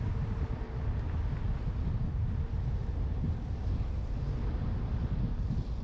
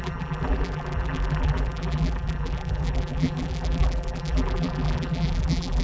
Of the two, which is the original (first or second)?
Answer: first